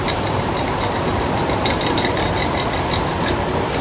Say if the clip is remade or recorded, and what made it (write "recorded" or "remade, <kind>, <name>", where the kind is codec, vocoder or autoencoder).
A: recorded